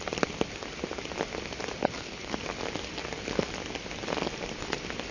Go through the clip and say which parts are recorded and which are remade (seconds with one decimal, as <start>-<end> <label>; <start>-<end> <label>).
0.0-1.8 recorded; 1.8-2.3 remade; 2.3-5.1 recorded